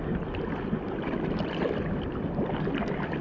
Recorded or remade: recorded